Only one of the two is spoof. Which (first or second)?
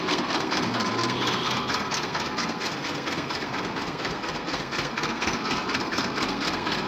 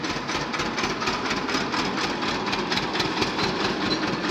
first